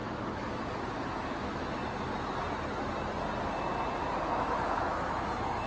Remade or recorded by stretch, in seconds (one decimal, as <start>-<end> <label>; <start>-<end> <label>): 0.0-1.8 remade; 1.8-4.2 recorded; 4.2-5.7 remade